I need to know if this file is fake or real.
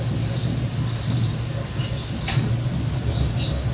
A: real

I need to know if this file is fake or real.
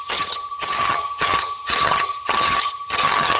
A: fake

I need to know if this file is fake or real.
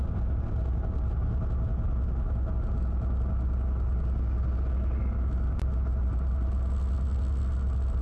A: real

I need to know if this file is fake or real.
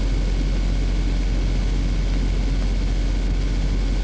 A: real